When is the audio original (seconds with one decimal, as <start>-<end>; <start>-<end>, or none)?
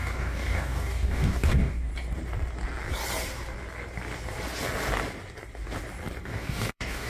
1.9-6.2